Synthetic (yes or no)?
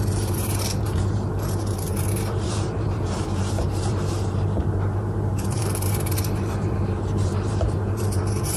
yes